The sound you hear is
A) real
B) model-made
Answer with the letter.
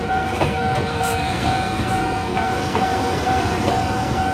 B